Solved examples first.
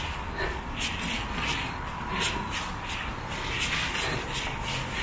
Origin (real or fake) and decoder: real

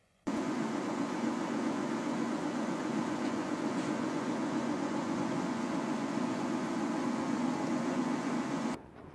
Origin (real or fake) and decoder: fake, vocoder, Vocos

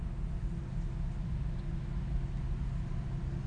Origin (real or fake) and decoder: real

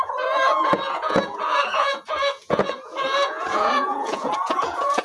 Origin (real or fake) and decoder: fake, vocoder, Vocos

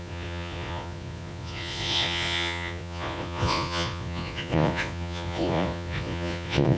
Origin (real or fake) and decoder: fake, vocoder, Vocos